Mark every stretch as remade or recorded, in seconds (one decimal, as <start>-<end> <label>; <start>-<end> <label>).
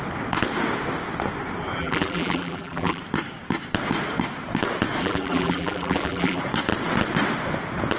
0.0-1.8 recorded; 1.8-3.0 remade; 3.0-5.0 recorded; 5.0-6.4 remade; 6.4-8.0 recorded